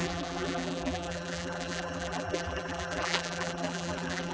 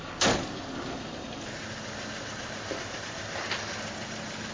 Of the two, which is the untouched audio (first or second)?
second